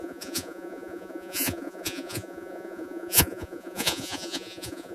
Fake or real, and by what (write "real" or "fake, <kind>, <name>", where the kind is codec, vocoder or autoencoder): fake, vocoder, Vocos